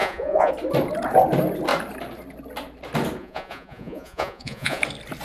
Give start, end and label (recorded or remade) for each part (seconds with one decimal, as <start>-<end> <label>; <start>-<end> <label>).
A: 0.0-0.5 remade; 0.5-3.2 recorded; 3.2-4.8 remade; 4.8-5.2 recorded

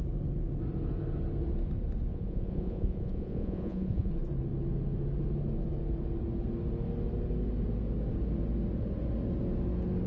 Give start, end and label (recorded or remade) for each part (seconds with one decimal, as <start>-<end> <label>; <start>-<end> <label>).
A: 0.0-2.1 recorded; 2.1-4.1 remade; 4.1-10.1 recorded

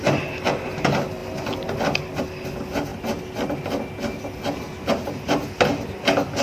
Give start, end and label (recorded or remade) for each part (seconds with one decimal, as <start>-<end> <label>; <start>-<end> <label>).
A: 0.0-6.4 recorded